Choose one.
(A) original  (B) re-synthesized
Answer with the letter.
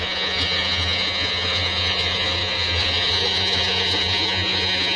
B